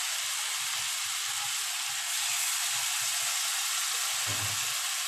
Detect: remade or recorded recorded